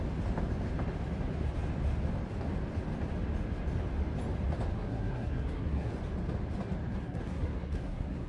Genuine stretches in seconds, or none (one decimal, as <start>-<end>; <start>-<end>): 0.0-4.7; 5.9-6.9